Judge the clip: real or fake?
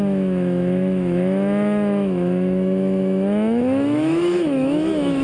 fake